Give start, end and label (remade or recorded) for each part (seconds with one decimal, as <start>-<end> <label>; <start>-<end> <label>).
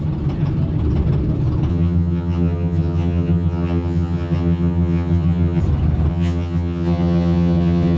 0.0-1.7 recorded; 1.7-5.6 remade; 5.6-6.1 recorded; 6.1-8.0 remade